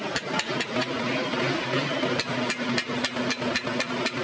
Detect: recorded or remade recorded